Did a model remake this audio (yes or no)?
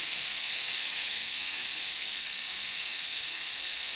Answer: yes